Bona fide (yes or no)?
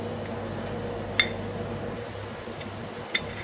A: yes